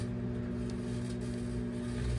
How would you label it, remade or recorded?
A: recorded